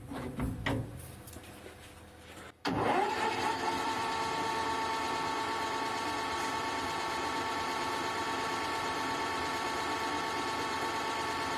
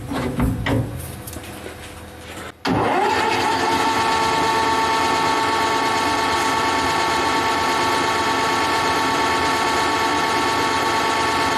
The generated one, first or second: first